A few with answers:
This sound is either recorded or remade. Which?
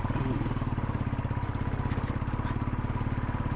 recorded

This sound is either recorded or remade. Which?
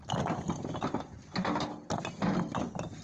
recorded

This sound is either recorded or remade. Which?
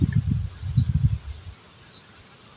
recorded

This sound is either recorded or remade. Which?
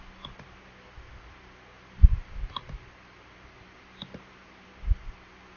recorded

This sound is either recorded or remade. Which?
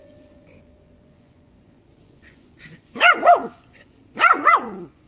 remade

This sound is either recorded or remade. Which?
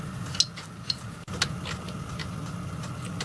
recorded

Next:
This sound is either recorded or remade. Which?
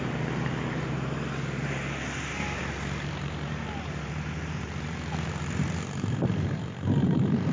remade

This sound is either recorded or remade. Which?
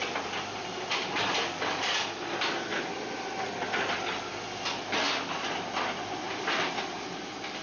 recorded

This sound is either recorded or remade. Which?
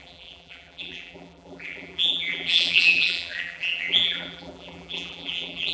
remade